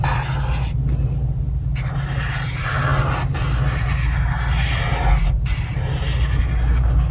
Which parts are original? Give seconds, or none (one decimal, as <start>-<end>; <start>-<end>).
0.0-7.1